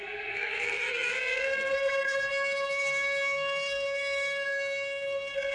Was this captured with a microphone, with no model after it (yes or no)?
no